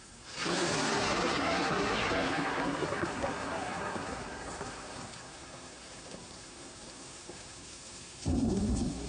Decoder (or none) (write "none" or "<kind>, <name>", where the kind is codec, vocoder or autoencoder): codec, SNAC